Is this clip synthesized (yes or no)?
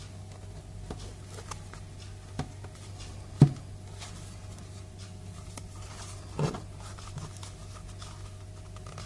no